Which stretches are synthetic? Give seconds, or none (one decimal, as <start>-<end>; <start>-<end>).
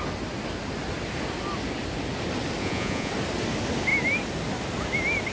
2.6-3.1